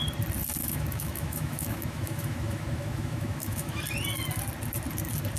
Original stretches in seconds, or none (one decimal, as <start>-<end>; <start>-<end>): 0.0-0.6; 3.8-5.4